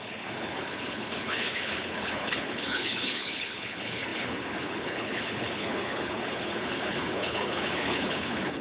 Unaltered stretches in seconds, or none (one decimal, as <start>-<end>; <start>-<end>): none